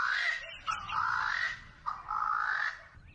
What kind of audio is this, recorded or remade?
recorded